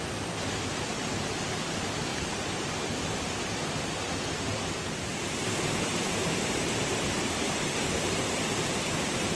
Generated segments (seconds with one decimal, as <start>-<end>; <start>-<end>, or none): 2.1-3.2; 5.1-8.1